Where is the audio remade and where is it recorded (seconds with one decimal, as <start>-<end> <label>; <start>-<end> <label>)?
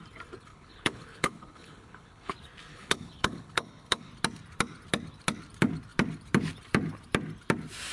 0.0-0.5 recorded; 0.5-2.3 remade; 2.3-2.7 recorded; 2.7-4.1 remade; 4.1-7.9 recorded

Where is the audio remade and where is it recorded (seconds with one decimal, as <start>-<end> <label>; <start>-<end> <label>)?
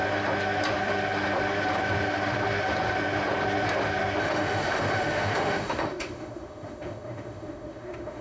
0.0-4.2 recorded; 4.2-8.2 remade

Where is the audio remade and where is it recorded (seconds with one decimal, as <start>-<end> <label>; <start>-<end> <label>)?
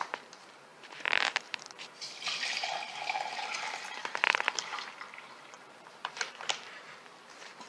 0.0-7.7 remade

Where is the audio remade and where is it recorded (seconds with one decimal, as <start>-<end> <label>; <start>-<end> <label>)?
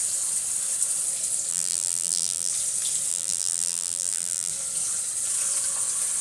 0.0-1.5 recorded; 1.5-2.5 remade; 2.5-3.1 recorded; 3.1-4.5 remade; 4.5-6.2 recorded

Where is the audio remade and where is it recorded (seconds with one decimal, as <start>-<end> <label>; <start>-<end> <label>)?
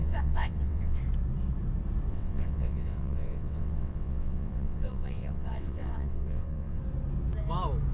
0.0-1.0 remade; 1.0-2.1 recorded; 2.1-6.8 remade; 6.8-7.9 recorded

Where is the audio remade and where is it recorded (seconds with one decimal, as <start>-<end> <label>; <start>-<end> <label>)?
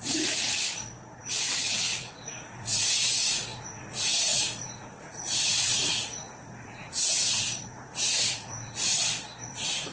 0.0-9.0 remade; 9.0-9.5 recorded; 9.5-9.9 remade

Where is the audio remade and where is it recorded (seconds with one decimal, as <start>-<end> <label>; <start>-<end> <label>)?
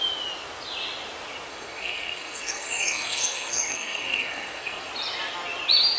0.0-1.5 recorded; 1.5-4.9 remade; 4.9-6.0 recorded